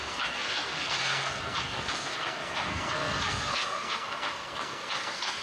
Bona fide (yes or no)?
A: no